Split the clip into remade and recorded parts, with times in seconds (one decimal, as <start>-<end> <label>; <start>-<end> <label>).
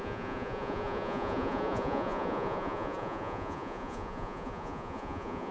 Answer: 0.0-5.5 remade